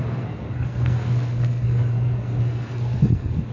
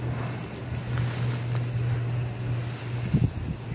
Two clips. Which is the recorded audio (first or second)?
second